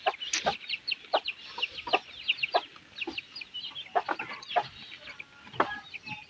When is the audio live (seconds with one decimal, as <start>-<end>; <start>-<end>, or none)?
0.0-6.3